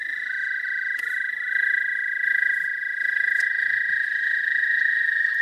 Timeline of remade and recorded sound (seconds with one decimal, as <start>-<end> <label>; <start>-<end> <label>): 0.0-5.4 remade